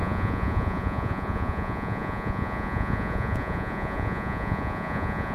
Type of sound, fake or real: fake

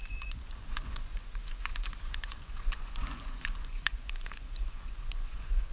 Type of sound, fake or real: fake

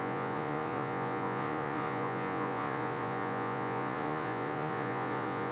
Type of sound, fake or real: fake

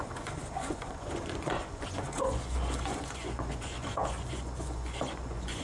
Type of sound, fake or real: fake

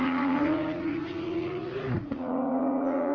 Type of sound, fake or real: fake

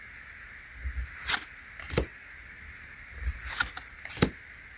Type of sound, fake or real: real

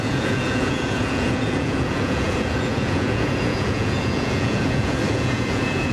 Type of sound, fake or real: fake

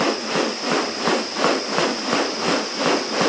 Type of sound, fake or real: real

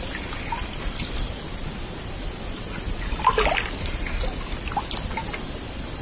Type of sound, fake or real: real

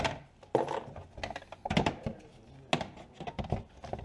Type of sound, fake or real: real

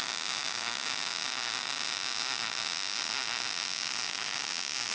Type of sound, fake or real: real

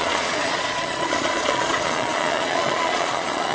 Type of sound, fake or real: fake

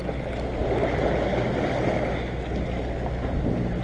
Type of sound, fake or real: real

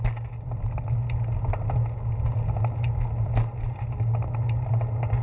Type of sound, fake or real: real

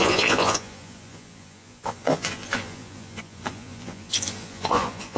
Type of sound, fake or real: fake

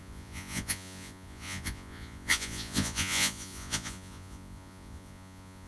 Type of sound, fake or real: fake